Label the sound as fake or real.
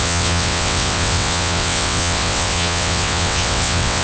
fake